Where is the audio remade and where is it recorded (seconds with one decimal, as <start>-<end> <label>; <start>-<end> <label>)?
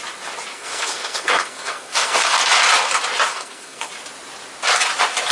0.0-0.5 recorded; 0.5-2.4 remade; 2.4-3.3 recorded; 3.3-3.9 remade; 3.9-5.3 recorded